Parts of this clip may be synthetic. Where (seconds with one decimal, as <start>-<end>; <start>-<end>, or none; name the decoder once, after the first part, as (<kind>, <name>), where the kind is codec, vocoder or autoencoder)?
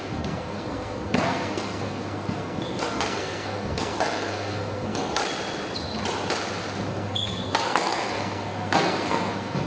0.0-5.2 (codec, SNAC); 6.9-9.7